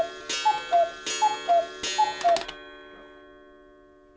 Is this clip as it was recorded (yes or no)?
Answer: yes